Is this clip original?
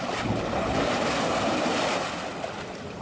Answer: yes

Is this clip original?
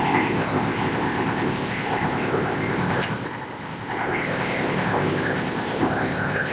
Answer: no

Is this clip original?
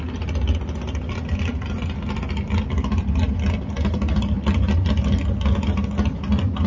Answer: yes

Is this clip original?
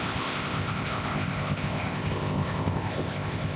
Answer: no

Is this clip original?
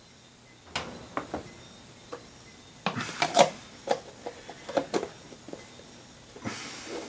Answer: yes